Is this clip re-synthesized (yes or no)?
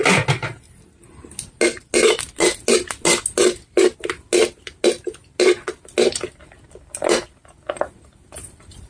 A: no